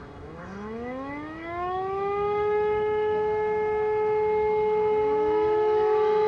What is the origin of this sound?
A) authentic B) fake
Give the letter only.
B